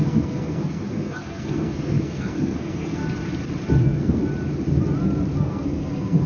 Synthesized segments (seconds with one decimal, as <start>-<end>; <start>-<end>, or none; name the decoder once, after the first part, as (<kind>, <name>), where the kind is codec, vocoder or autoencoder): 0.0-3.0 (codec, SNAC); 3.8-4.2; 5.4-6.3